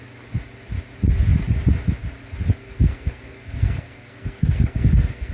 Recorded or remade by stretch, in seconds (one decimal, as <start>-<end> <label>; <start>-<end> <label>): 0.0-2.6 recorded; 2.6-5.3 remade